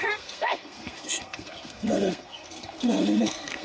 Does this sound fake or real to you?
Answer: fake